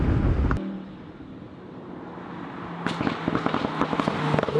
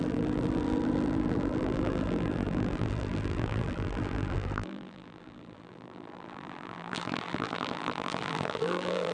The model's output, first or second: second